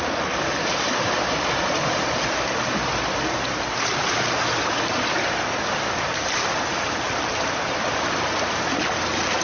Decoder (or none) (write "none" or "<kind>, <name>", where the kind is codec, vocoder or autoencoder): none